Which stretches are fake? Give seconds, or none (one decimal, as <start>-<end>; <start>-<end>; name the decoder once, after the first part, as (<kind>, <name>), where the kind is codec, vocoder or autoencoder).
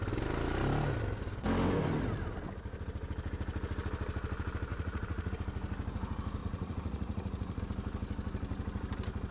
4.7-5.3 (vocoder, Vocos); 6.4-7.6